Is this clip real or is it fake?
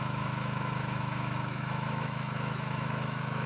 fake